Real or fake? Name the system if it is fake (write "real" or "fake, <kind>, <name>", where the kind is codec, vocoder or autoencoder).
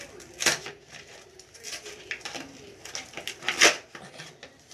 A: real